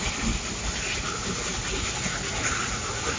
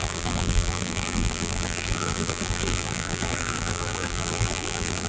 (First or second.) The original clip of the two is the first